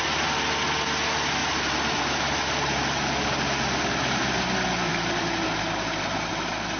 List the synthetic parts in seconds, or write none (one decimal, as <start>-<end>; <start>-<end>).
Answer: 1.4-4.3; 4.9-6.3